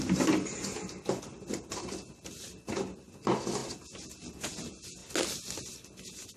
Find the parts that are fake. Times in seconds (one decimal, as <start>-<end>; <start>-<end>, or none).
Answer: none